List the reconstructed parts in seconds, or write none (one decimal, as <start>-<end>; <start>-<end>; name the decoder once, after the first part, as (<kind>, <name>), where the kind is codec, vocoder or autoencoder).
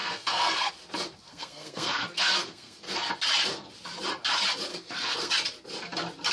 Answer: 0.0-0.7 (codec, SNAC); 1.3-3.1; 4.7-5.3